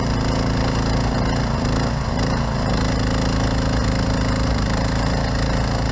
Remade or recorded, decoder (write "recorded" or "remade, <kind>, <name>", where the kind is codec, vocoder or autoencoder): recorded